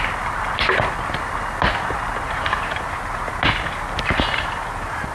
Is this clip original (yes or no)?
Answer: yes